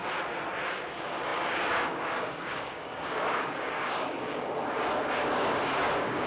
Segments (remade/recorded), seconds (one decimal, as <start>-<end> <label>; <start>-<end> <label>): 0.0-0.7 recorded; 0.7-6.3 remade